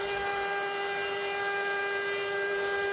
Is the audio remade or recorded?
remade